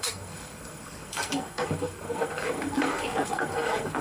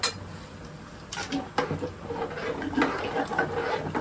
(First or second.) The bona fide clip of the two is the second